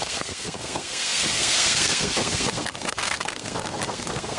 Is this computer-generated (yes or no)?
yes